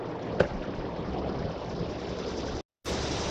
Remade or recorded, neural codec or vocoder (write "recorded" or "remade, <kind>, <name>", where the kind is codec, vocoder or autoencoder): recorded